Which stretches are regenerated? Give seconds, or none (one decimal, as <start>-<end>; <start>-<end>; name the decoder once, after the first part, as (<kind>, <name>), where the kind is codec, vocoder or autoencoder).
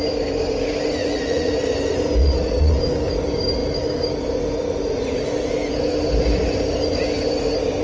1.0-1.5 (vocoder, Vocos); 2.2-2.8